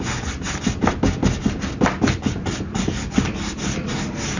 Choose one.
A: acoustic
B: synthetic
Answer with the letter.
A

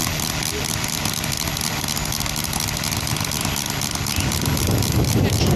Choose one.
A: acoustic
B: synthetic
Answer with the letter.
A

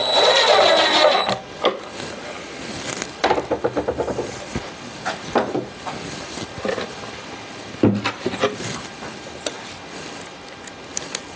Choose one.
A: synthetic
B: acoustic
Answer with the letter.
B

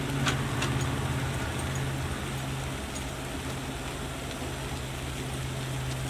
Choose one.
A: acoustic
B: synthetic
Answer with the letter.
A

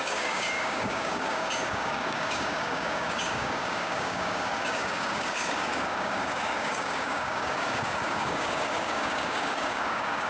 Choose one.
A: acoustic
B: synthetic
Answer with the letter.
B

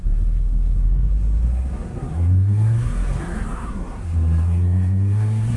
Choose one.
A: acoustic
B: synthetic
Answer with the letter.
B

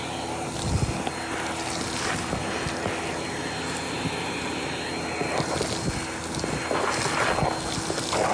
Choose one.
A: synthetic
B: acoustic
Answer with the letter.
B